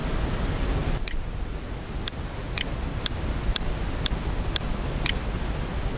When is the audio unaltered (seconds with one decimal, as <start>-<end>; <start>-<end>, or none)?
0.0-6.0